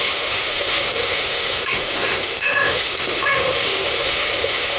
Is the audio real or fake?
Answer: fake